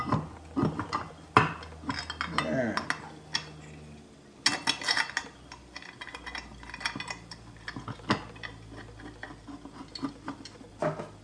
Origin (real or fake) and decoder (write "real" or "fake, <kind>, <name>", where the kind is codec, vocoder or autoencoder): real